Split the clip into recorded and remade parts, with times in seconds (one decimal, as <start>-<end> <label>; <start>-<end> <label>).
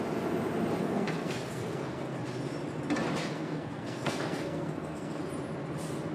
0.0-0.8 recorded; 0.8-2.2 remade; 2.2-3.3 recorded; 3.3-5.2 remade; 5.2-6.1 recorded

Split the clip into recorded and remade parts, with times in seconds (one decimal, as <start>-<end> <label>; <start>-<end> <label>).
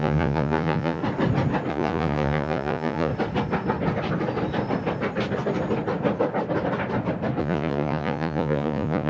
0.0-1.0 remade; 1.0-1.7 recorded; 1.7-3.1 remade; 3.1-7.4 recorded; 7.4-9.1 remade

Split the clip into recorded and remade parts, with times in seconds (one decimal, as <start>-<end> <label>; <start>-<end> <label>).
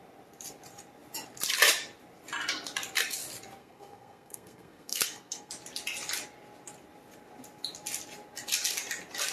0.0-3.6 recorded; 3.6-5.5 remade; 5.5-9.3 recorded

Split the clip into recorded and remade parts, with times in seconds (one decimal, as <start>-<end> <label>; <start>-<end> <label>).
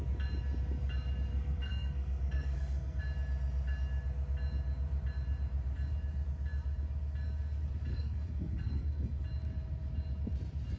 0.0-1.3 recorded; 1.3-3.0 remade; 3.0-7.9 recorded; 7.9-9.2 remade; 9.2-10.8 recorded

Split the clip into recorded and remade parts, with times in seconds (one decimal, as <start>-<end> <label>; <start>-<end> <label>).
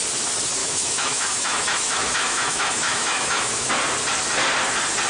0.0-0.6 recorded; 0.6-3.7 remade; 3.7-5.1 recorded